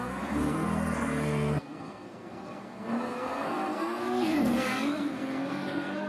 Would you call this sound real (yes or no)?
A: no